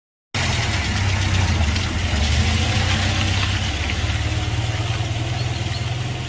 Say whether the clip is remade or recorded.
recorded